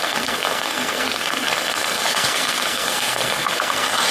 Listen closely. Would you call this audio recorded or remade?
remade